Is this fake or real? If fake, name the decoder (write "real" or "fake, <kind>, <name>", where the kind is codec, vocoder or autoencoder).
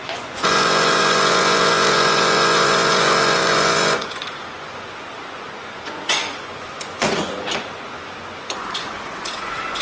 fake, vocoder, Vocos